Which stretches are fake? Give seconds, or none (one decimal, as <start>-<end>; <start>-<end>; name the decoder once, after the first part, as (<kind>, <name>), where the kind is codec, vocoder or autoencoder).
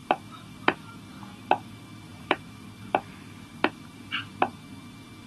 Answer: 0.0-1.0 (vocoder, BigVGAN v2); 2.1-4.0